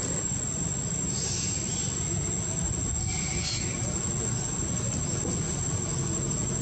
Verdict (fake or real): real